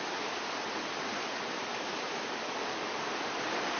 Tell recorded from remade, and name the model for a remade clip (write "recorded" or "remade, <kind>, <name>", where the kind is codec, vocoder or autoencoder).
recorded